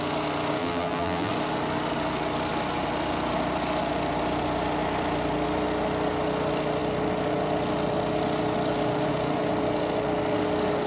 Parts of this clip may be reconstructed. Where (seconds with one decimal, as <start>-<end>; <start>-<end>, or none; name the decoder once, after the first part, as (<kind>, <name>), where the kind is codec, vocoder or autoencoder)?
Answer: 0.6-1.3 (vocoder, BigVGAN v2)